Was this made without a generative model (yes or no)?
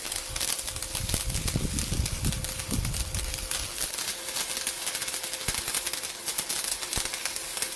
yes